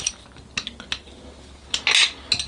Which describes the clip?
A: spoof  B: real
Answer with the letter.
B